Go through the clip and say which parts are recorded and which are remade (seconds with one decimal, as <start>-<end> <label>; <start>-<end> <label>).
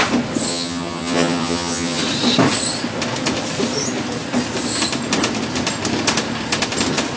0.0-0.5 recorded; 0.5-2.0 remade; 2.0-7.2 recorded